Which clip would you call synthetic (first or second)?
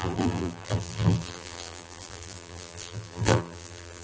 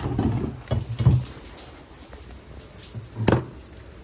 first